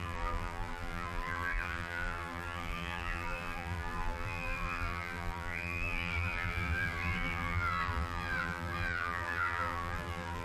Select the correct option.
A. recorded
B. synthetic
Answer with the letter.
B